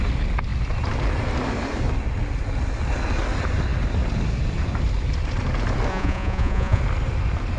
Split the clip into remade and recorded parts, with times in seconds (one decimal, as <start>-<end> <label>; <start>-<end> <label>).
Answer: 0.0-5.9 recorded; 5.9-6.8 remade; 6.8-7.6 recorded